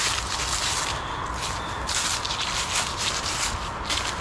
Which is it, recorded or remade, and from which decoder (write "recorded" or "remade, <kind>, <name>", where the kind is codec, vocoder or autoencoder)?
recorded